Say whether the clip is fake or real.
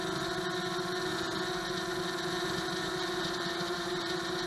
real